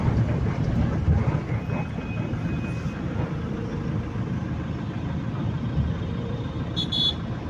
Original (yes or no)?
yes